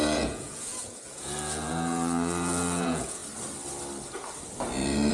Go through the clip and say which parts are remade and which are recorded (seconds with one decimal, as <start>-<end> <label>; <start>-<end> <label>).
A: 0.0-3.2 remade; 3.2-5.1 recorded